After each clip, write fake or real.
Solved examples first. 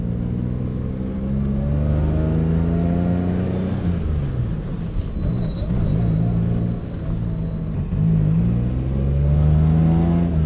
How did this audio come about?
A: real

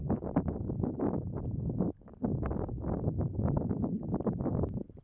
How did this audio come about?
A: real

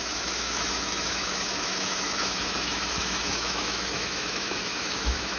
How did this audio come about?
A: fake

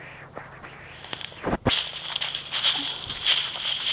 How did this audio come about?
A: fake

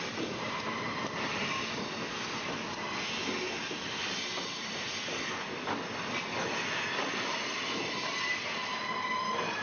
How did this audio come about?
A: real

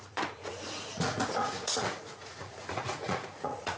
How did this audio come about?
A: fake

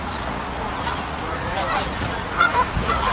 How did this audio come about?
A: fake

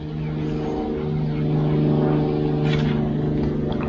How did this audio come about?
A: real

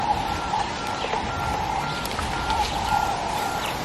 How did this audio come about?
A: real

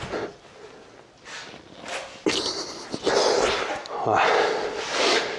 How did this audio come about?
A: real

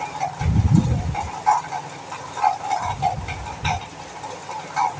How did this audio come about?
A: real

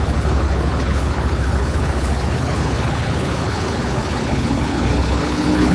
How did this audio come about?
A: fake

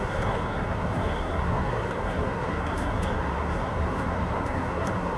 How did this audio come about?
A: fake